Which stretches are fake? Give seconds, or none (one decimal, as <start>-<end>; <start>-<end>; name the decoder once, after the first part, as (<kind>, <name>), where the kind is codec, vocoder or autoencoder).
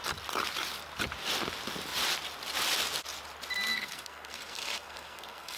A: 3.7-5.6 (codec, SNAC)